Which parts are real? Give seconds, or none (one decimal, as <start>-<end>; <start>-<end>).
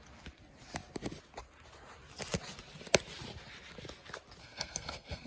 0.0-4.4